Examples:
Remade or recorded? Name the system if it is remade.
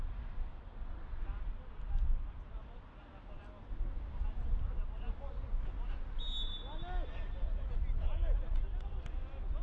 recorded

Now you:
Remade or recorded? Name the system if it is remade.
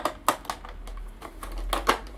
recorded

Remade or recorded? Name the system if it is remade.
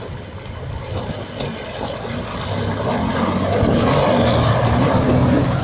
recorded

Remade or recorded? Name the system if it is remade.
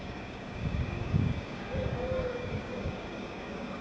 remade, codec, DAC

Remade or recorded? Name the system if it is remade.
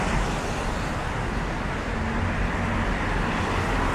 recorded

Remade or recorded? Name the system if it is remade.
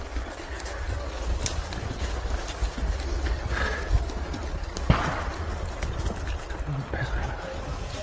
recorded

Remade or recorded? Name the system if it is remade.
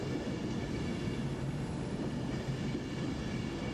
recorded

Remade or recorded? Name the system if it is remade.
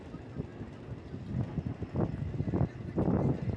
recorded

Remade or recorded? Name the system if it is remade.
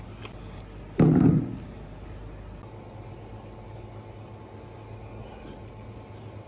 recorded